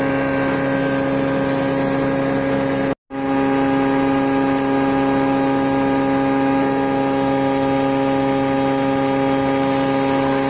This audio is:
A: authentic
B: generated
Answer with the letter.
A